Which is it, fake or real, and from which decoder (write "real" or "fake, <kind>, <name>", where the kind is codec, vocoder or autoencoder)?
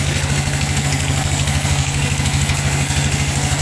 fake, codec, SNAC